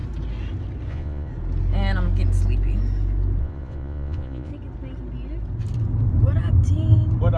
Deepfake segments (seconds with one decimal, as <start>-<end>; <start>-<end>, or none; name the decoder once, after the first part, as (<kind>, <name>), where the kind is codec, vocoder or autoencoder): 0.9-1.3 (vocoder, Vocos); 3.4-4.5

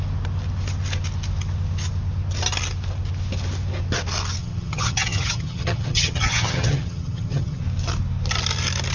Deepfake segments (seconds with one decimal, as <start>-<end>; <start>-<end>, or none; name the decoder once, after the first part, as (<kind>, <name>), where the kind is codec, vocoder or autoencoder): 4.4-7.6 (vocoder, HiFi-GAN)

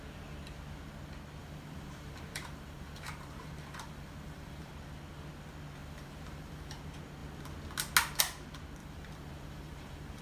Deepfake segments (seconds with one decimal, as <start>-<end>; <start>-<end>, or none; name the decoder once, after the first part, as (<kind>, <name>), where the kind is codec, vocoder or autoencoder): 1.4-4.7 (vocoder, BigVGAN v2); 5.8-6.8; 8.8-10.2